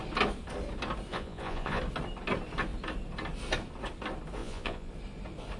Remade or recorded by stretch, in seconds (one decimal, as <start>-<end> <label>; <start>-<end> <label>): 0.0-1.1 recorded; 1.1-1.8 remade; 1.8-4.4 recorded; 4.4-4.9 remade; 4.9-5.6 recorded